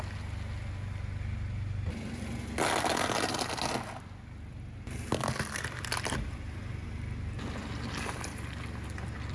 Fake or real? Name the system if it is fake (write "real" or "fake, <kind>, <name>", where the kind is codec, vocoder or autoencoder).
real